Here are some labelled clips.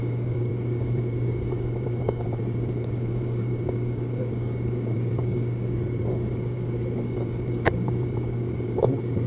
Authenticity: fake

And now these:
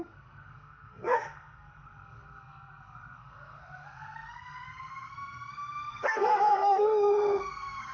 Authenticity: fake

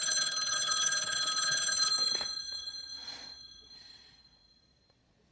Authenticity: fake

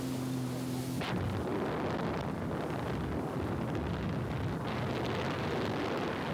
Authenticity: real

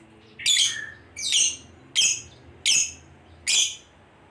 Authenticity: real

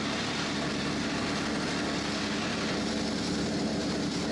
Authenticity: real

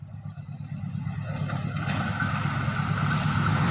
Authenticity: real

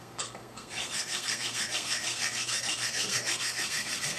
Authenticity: fake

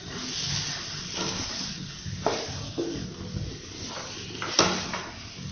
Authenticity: real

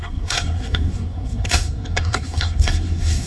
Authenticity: fake